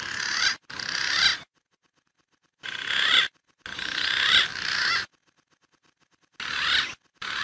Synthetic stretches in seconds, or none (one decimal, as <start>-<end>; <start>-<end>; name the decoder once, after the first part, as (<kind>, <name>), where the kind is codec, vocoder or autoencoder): none